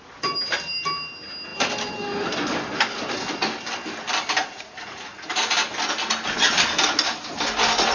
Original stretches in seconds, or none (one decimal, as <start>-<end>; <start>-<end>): 0.0-4.4; 5.3-7.9